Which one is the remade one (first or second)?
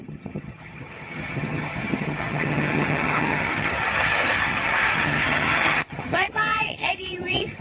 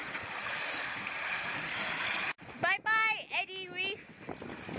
first